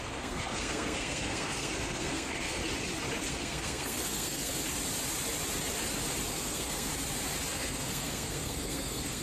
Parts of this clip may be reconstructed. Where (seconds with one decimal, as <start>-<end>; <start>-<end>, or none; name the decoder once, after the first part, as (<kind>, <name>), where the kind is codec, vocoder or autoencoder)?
0.0-2.6 (codec, SNAC); 3.3-4.5; 6.3-6.9; 7.5-9.2